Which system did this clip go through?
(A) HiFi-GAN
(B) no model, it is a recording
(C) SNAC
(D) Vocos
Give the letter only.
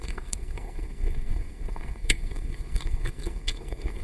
C